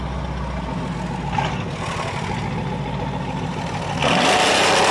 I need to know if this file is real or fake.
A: real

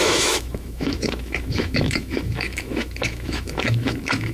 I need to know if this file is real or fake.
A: fake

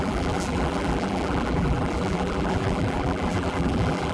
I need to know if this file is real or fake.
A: fake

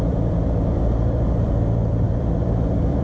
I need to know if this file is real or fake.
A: fake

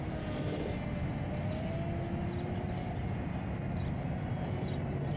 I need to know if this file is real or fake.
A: real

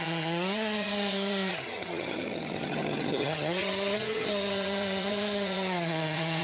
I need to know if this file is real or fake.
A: fake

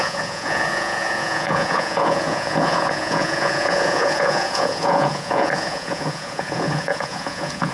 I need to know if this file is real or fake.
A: fake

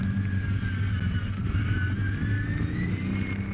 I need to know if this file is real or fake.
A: real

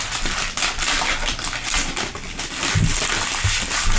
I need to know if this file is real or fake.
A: real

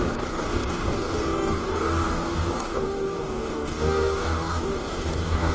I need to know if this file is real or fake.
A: fake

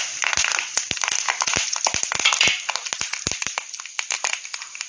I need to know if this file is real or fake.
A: real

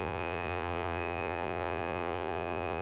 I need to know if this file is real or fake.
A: fake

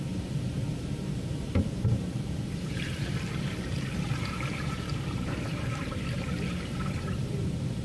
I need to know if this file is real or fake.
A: fake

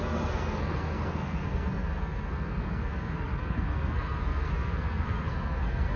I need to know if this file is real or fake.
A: fake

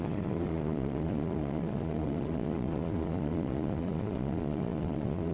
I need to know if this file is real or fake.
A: fake